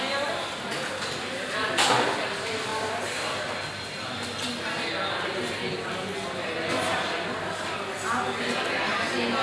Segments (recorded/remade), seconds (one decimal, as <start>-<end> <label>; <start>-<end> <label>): 0.0-9.4 recorded